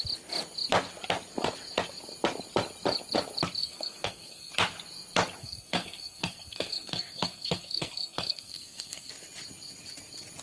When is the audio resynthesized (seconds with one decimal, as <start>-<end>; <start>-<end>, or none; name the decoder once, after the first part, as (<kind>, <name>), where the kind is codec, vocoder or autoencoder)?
3.6-4.5 (codec, SNAC); 5.4-9.1